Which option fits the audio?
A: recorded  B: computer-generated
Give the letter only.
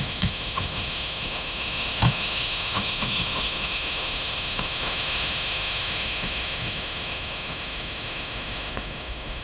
B